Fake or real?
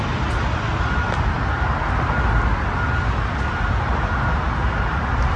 real